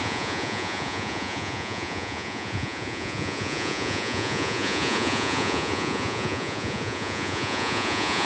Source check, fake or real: fake